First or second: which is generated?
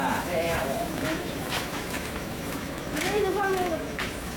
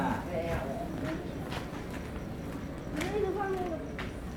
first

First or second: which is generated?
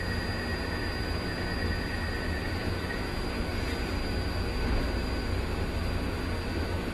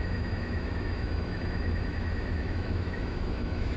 second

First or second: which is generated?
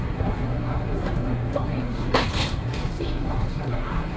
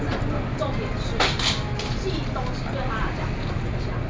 first